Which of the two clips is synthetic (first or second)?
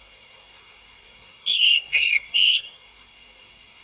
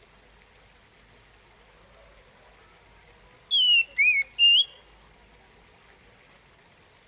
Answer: first